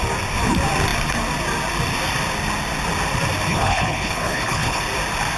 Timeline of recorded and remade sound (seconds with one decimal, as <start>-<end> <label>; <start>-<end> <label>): 0.0-3.5 recorded; 3.5-4.8 remade; 4.8-5.4 recorded